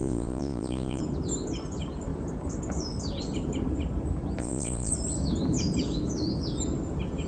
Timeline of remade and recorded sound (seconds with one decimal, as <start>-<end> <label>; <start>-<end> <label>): 0.0-1.0 remade; 1.0-4.4 recorded; 4.4-4.9 remade; 4.9-7.3 recorded